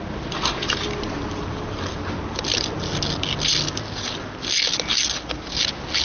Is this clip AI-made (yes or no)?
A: no